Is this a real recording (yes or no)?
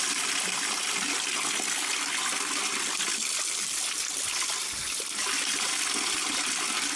yes